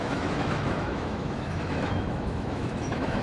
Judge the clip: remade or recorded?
remade